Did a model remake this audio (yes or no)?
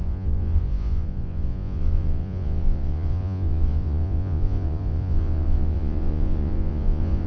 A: yes